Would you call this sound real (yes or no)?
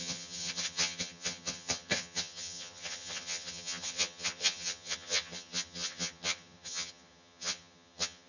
no